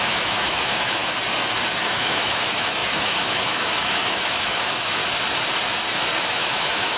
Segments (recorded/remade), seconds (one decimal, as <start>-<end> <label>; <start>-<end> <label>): 0.0-1.0 remade; 1.0-1.8 recorded; 1.8-5.0 remade; 5.0-6.2 recorded; 6.2-7.0 remade